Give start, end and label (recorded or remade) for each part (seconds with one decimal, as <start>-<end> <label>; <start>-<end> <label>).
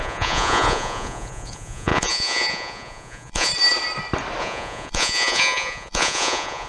0.0-3.5 remade; 3.5-4.4 recorded; 4.4-6.7 remade